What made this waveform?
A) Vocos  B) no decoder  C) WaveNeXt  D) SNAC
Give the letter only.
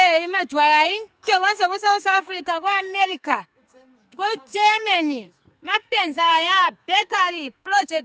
D